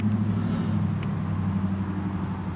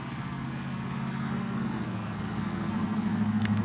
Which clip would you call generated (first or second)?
second